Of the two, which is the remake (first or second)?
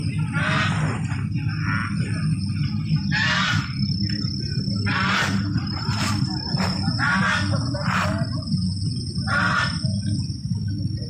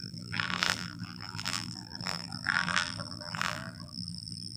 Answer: second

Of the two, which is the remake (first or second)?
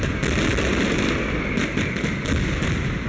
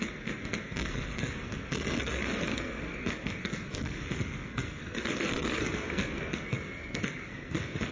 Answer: second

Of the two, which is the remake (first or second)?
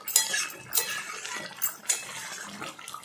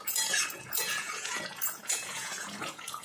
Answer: second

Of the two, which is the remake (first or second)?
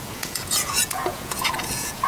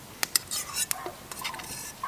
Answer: first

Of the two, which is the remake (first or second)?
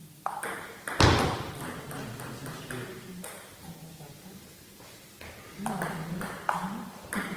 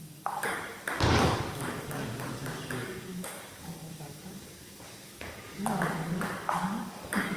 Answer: second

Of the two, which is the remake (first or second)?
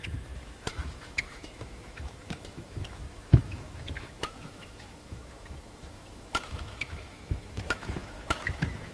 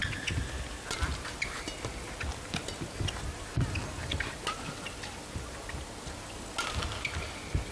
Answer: first